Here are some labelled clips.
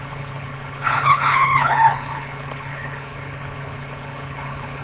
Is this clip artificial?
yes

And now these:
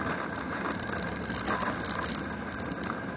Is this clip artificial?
yes